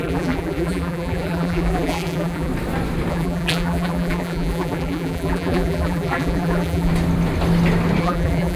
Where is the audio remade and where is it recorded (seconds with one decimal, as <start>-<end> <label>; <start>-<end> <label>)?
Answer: 0.0-2.5 remade; 2.5-3.1 recorded; 3.1-6.9 remade; 6.9-8.0 recorded; 8.0-8.6 remade